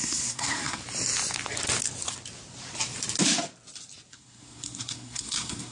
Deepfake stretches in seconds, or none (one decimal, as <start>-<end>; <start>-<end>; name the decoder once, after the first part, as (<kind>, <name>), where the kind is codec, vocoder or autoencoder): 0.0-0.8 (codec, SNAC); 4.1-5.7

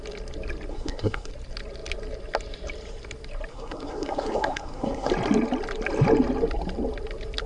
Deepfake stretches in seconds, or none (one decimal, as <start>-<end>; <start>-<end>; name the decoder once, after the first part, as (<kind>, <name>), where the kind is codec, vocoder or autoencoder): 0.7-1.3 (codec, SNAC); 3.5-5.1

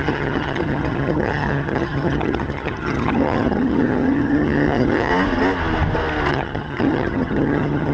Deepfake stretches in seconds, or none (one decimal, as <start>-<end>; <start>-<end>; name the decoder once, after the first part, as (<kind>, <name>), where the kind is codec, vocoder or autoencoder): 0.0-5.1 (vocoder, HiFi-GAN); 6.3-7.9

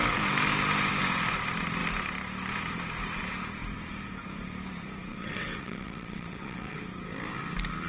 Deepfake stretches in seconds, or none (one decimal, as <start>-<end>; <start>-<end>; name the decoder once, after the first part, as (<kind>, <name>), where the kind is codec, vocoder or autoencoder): 5.1-6.8 (vocoder, WaveNeXt)